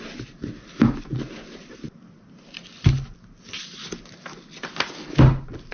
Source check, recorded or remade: recorded